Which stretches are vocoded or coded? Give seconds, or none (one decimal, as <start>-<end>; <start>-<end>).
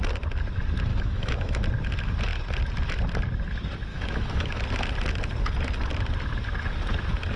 0.9-1.6; 3.9-4.6